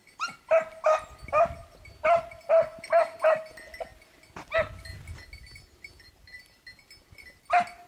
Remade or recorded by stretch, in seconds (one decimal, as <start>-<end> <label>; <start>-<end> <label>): 0.0-7.9 recorded